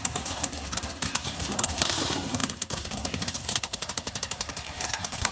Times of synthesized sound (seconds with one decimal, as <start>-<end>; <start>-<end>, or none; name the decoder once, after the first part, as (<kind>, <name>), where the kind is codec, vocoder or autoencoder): 0.0-5.3 (codec, SNAC)